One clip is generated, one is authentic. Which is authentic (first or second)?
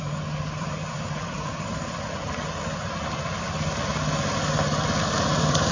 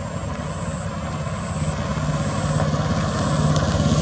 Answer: second